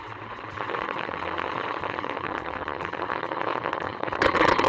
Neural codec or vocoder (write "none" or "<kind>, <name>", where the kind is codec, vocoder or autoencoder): vocoder, WaveNeXt